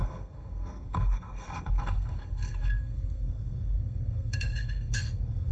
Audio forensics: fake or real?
fake